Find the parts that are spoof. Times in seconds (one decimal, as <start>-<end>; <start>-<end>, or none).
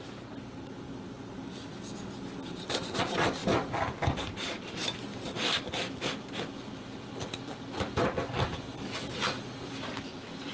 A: 0.0-1.7; 2.5-10.5